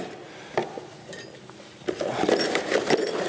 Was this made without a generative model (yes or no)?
yes